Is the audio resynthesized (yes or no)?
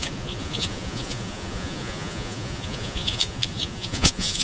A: yes